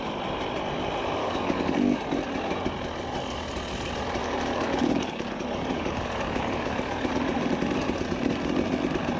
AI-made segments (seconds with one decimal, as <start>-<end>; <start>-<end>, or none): 1.2-2.0; 4.2-7.1